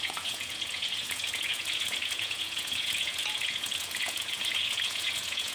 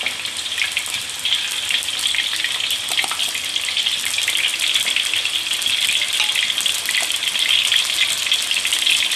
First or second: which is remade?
first